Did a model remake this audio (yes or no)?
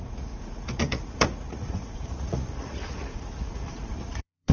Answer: yes